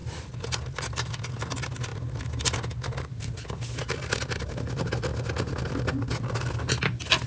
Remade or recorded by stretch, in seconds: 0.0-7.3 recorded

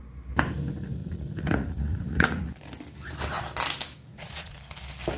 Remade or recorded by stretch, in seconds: 0.0-1.0 recorded; 1.0-2.5 remade; 2.5-4.1 recorded; 4.1-4.6 remade; 4.6-5.2 recorded